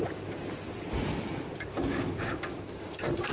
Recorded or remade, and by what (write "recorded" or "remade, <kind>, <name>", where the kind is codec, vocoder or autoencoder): recorded